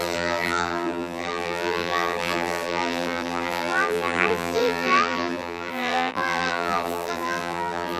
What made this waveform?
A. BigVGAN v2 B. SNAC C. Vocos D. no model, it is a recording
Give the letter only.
A